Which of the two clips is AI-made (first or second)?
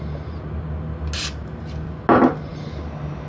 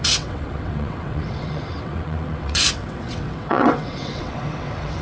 second